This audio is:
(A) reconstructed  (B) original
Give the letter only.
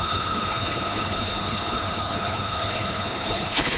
A